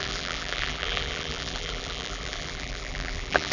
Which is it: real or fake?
fake